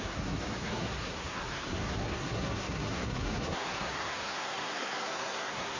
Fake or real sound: fake